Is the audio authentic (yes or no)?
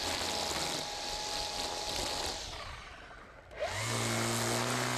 yes